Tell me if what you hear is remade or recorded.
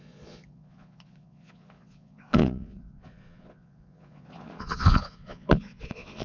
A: remade